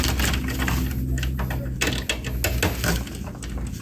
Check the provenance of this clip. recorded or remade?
recorded